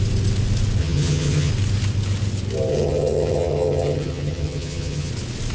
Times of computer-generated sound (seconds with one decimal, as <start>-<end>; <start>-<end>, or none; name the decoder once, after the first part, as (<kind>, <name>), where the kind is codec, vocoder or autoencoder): 0.8-1.5 (vocoder, HiFi-GAN); 2.7-5.1